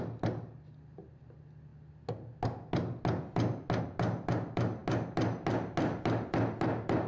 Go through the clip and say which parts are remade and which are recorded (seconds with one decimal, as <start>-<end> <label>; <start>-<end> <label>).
0.0-7.1 recorded